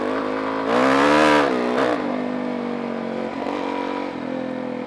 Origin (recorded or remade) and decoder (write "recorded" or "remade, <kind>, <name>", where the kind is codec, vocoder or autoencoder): recorded